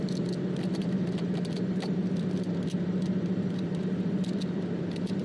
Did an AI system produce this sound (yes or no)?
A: yes